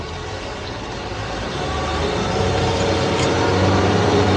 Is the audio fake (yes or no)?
yes